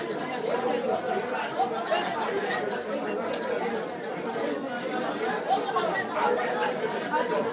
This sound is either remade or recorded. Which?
recorded